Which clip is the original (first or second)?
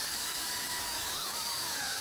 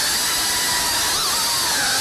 second